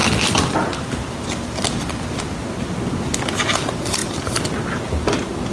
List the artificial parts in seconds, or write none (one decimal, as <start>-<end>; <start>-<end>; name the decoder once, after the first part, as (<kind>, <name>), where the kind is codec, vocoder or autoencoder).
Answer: none